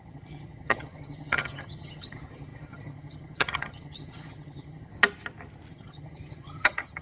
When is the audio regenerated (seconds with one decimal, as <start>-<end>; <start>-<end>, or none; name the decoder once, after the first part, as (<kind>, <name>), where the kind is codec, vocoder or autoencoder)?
0.0-4.9 (vocoder, HiFi-GAN); 5.7-7.0